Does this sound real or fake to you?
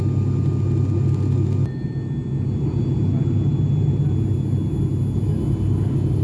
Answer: real